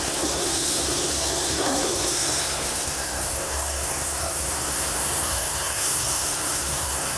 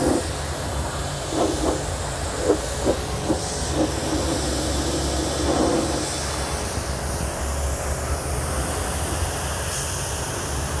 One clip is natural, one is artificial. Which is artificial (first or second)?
first